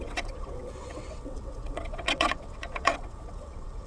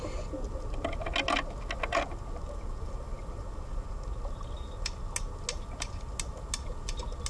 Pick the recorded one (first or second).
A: second